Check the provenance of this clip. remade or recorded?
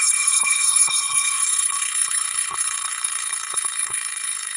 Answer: remade